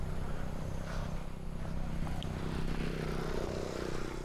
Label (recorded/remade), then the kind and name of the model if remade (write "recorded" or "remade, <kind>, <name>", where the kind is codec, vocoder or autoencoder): recorded